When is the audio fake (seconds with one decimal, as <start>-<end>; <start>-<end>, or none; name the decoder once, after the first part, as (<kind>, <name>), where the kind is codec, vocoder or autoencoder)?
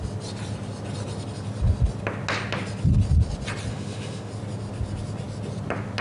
3.7-4.3 (autoencoder, DAC-VAE)